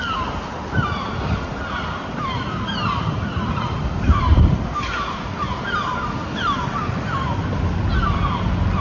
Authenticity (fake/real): real